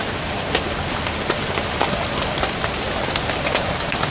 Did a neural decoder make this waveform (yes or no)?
no